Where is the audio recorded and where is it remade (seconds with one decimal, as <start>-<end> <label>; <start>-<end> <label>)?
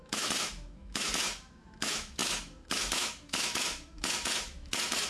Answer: 0.0-5.1 remade